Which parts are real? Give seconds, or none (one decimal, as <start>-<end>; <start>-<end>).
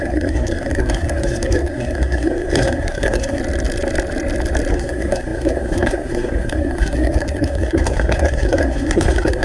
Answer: 3.4-4.7